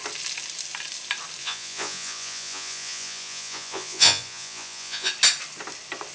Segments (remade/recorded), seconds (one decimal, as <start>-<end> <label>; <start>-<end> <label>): 0.0-1.4 recorded; 1.4-5.1 remade; 5.1-6.1 recorded